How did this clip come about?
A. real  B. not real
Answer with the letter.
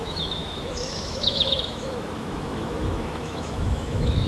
B